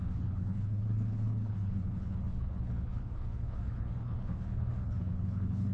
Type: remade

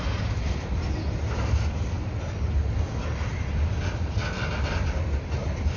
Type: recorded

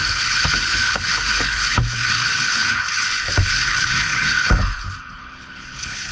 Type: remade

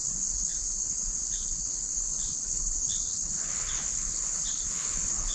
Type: remade